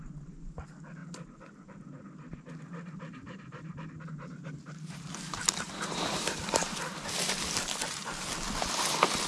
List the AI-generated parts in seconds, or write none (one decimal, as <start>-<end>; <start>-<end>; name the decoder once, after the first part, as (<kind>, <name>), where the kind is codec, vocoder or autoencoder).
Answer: 3.1-6.9 (vocoder, BigVGAN v2)